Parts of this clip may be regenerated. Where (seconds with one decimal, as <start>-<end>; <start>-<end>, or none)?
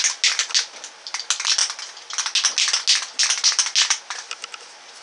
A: none